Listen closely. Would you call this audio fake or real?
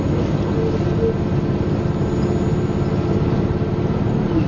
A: real